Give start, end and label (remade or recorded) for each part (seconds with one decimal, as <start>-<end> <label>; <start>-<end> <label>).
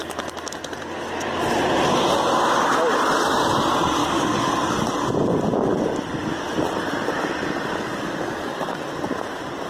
0.0-4.0 recorded; 4.0-4.5 remade; 4.5-7.7 recorded; 7.7-8.7 remade; 8.7-9.7 recorded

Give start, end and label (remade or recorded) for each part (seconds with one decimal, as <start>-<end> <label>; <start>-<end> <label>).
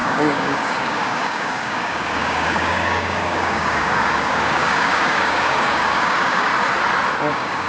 0.0-6.5 remade; 6.5-7.3 recorded; 7.3-7.7 remade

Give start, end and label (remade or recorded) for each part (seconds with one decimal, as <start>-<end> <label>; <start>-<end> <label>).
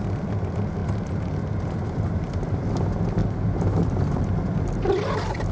0.0-5.5 recorded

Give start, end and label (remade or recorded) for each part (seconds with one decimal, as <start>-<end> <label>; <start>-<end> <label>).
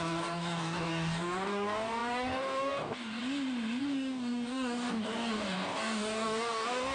0.0-3.2 remade; 3.2-3.8 recorded; 3.8-6.9 remade